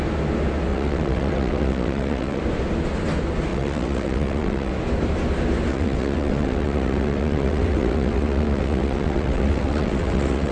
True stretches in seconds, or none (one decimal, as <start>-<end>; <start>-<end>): 0.0-0.7; 2.4-3.5; 4.7-5.7

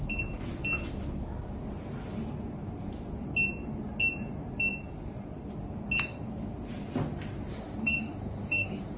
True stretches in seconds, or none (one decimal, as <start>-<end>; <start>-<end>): 0.0-7.5

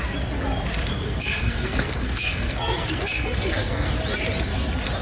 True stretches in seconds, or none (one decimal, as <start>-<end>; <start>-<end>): 0.0-0.9; 3.9-5.0